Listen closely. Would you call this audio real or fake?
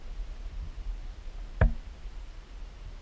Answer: real